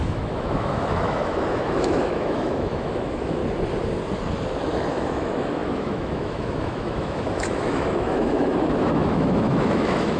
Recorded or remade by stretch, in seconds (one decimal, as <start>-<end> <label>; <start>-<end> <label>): 0.0-3.4 remade; 3.4-4.9 recorded; 4.9-10.2 remade